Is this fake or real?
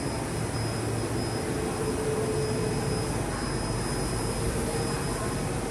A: real